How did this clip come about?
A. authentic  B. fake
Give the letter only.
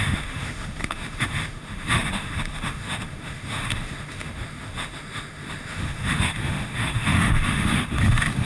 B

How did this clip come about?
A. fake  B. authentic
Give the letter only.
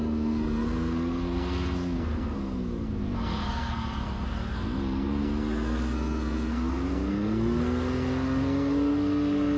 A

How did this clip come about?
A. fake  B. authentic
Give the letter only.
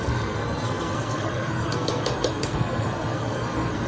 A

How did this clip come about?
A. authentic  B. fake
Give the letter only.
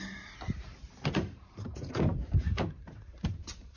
B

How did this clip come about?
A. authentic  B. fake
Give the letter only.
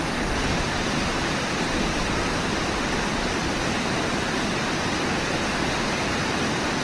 A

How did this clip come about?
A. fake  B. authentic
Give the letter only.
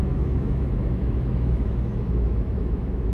A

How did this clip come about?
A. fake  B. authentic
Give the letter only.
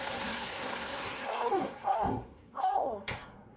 A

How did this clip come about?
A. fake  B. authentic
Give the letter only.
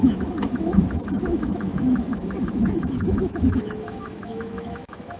A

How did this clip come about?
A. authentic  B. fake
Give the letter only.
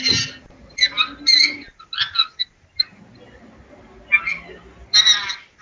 A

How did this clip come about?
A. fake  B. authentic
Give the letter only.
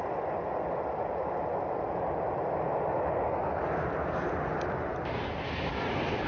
B